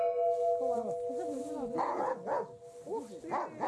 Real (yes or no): yes